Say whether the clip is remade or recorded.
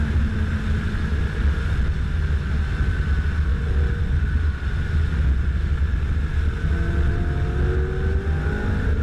recorded